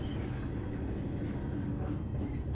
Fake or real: real